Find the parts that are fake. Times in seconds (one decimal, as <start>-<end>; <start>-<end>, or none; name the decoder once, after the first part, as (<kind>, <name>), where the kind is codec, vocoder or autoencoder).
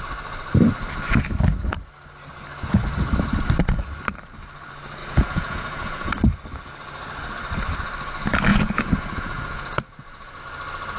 5.0-6.1 (vocoder, Vocos); 8.5-10.4